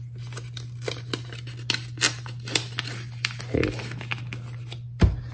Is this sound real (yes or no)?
yes